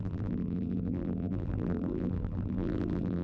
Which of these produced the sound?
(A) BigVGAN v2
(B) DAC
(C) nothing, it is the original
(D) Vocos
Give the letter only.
A